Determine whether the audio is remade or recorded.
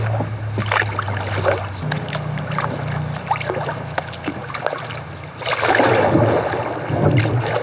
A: recorded